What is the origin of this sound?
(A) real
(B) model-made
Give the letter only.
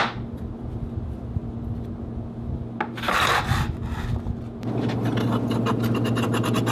A